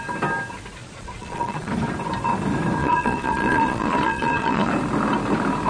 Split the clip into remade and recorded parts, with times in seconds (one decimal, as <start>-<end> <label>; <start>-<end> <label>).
0.0-0.8 recorded; 0.8-1.7 remade; 1.7-2.8 recorded; 2.8-4.7 remade; 4.7-5.7 recorded